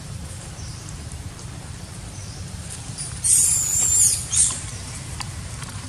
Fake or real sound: fake